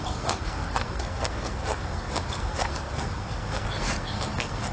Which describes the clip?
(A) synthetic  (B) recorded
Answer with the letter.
A